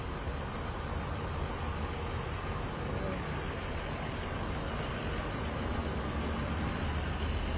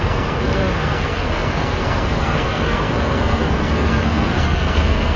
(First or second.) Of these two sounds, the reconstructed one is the second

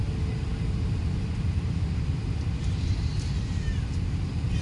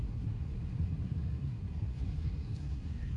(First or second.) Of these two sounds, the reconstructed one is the second